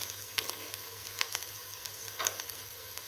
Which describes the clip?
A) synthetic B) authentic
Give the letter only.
A